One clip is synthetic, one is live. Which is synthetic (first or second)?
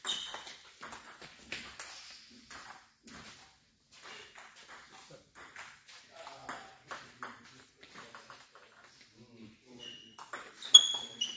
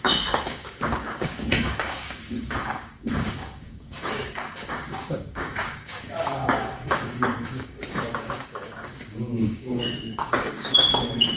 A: second